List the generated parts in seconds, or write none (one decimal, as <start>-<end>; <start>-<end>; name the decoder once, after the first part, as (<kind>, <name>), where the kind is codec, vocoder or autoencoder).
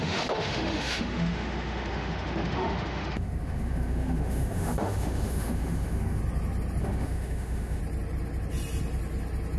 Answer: 0.0-6.2 (autoencoder, DAC-VAE); 6.8-7.8